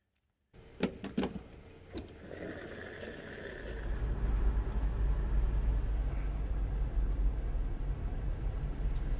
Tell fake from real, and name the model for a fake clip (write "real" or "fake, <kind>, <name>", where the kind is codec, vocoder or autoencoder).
real